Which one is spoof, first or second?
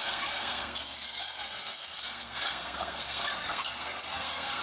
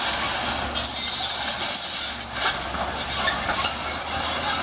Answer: first